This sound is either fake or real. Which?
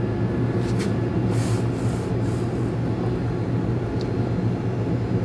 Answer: real